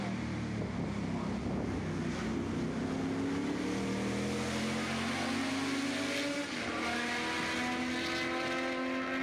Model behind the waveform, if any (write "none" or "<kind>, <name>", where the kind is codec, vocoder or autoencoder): none